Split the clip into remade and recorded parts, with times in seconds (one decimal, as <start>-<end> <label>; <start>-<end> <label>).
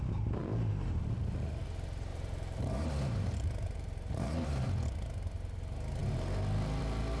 0.0-0.4 recorded; 0.4-1.0 remade; 1.0-2.1 recorded; 2.1-4.7 remade; 4.7-7.2 recorded